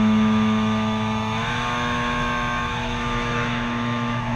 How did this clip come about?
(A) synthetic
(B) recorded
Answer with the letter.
A